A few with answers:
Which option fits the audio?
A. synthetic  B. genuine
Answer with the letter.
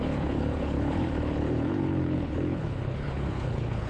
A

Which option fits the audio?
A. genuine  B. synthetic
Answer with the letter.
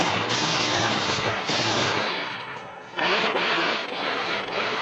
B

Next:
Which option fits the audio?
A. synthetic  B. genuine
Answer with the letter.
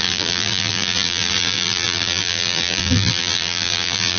A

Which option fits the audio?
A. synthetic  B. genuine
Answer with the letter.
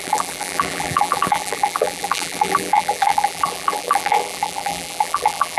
A